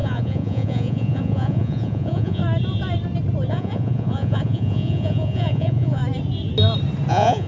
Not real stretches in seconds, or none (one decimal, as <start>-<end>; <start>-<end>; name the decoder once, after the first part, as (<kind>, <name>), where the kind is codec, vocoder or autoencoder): 0.0-2.4 (vocoder, Vocos); 3.5-6.0; 7.1-7.5